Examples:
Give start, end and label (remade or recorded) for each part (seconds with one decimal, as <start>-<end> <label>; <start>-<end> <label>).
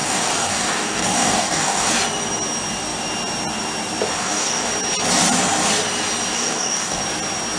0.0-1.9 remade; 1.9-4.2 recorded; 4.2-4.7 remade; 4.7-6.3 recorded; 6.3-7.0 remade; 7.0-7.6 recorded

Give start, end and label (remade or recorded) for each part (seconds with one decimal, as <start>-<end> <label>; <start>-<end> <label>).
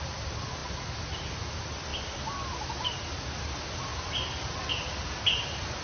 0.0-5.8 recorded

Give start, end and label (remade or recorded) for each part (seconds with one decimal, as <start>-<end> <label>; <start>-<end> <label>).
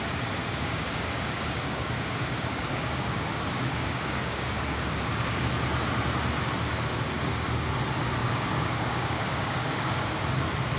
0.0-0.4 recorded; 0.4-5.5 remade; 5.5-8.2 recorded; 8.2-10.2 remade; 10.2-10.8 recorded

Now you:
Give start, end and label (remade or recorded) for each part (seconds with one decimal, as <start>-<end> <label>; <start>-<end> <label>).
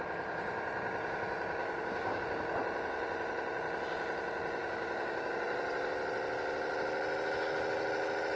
0.0-1.6 recorded; 1.6-2.2 remade; 2.2-4.6 recorded; 4.6-5.3 remade; 5.3-8.4 recorded